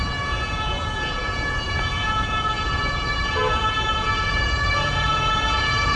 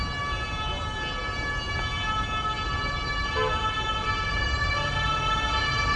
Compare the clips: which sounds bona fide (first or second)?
second